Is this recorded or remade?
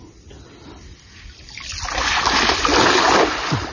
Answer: recorded